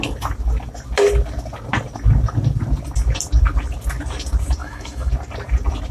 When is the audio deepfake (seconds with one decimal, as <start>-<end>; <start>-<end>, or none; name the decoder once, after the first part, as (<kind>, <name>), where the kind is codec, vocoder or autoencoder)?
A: 4.6-5.1 (autoencoder, DAC-VAE)